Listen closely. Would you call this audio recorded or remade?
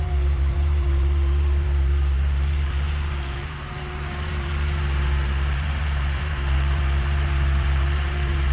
remade